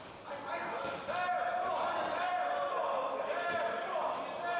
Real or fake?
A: real